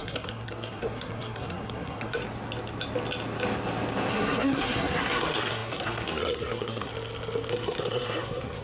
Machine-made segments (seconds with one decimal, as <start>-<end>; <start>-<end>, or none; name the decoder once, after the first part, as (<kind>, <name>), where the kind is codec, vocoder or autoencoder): 0.0-2.2 (codec, SNAC); 4.1-6.9; 7.5-8.6